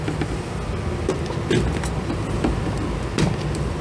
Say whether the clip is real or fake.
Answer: real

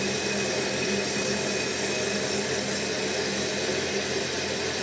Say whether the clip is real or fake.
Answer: real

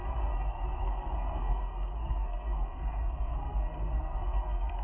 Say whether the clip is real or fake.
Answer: fake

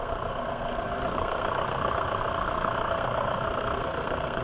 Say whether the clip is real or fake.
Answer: fake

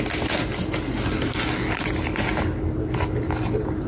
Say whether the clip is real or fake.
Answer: real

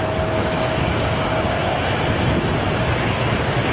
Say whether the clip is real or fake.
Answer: real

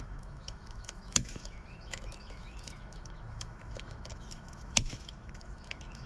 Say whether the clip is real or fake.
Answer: fake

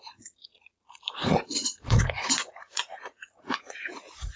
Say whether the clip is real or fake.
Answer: fake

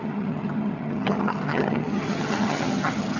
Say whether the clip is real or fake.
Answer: fake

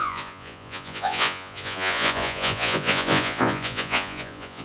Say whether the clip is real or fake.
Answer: fake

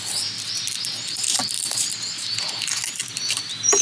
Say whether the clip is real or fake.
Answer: real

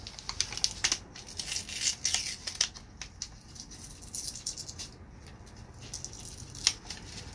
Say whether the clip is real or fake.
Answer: real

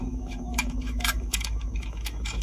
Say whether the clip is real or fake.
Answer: fake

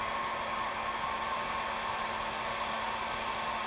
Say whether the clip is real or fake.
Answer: real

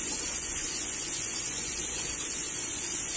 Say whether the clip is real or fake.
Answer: fake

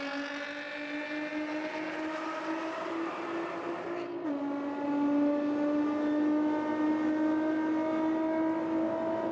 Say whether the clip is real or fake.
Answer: real